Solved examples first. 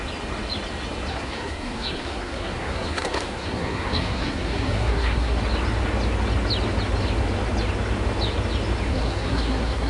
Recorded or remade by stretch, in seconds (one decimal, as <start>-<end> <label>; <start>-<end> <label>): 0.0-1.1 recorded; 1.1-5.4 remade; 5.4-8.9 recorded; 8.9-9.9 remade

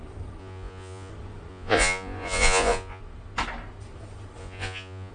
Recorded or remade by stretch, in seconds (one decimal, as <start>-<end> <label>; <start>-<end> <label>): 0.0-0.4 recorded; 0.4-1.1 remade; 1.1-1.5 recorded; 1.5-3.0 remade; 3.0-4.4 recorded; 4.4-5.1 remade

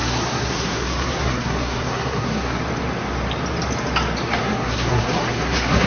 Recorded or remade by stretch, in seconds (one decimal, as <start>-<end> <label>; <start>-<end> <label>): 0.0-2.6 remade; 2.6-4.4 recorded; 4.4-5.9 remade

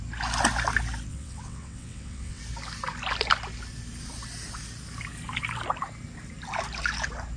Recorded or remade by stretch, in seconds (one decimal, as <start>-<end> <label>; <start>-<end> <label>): 0.0-1.1 recorded; 1.1-2.4 remade; 2.4-7.4 recorded